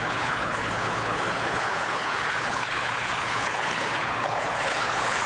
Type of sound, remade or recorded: remade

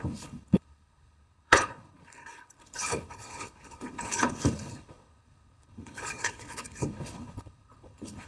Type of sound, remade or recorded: remade